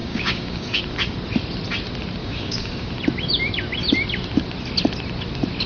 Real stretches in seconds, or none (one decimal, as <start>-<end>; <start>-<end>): 0.8-2.2; 2.9-5.7